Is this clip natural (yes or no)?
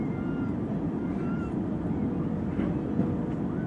yes